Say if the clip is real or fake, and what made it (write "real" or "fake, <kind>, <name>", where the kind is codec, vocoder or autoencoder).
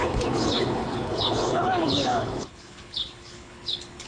fake, codec, HILCodec